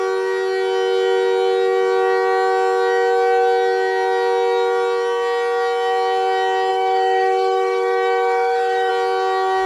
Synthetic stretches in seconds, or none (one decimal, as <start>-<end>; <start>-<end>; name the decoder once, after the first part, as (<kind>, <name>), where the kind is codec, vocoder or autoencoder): 6.7-8.9 (autoencoder, DAC-VAE)